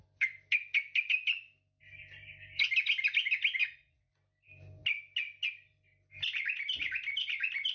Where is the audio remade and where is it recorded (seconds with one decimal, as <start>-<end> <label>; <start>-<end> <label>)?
0.0-3.6 recorded; 3.6-4.1 remade; 4.1-7.7 recorded